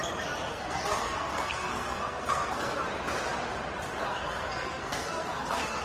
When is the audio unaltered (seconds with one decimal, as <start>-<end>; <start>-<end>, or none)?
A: 0.0-0.5; 2.8-4.0